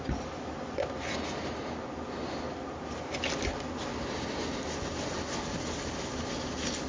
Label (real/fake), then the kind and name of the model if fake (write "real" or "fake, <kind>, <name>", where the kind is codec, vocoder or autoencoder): real